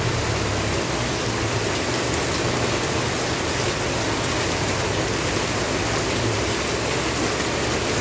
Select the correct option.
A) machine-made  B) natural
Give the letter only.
B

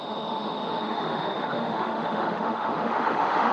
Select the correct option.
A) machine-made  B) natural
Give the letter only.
A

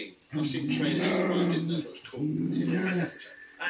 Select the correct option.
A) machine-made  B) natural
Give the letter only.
B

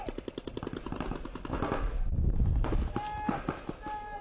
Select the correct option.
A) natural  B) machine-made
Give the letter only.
A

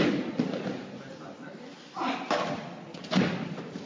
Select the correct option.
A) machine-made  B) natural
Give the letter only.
B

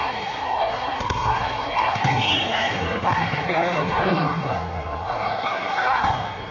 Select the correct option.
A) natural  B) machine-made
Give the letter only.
B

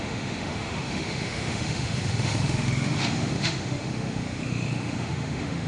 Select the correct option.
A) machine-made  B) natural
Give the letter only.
A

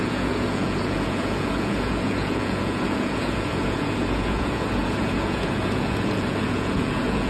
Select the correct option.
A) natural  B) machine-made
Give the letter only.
B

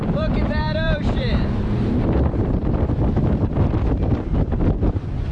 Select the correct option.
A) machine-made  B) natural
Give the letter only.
A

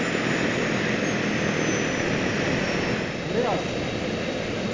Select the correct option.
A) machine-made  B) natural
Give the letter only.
B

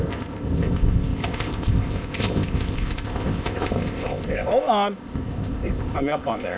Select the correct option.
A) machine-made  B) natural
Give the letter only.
A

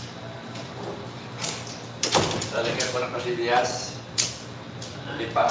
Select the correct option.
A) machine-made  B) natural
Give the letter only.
B